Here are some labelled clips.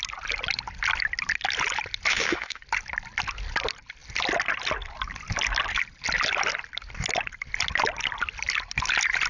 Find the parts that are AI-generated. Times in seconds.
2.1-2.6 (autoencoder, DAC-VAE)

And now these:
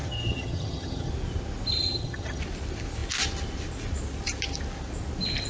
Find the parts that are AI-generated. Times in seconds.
0.0-1.1 (vocoder, HiFi-GAN); 1.8-2.4

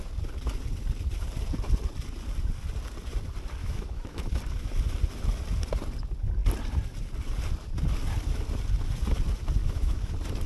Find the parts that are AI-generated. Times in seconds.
3.6-4.4 (autoencoder, DAC-VAE); 9.6-10.1

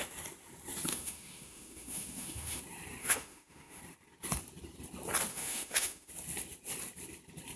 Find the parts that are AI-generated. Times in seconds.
0.9-2.6 (autoencoder, DAC-VAE); 3.0-3.8; 5.3-6.1

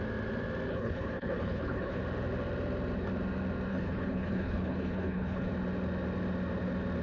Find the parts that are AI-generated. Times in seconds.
0.7-2.0 (codec, HILCodec); 3.7-5.5